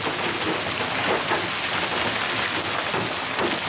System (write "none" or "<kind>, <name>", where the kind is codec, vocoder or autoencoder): none